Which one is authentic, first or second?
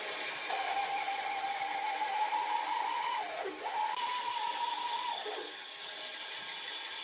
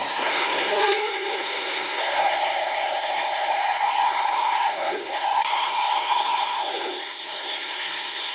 first